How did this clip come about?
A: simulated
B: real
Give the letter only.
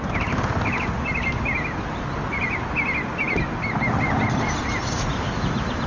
B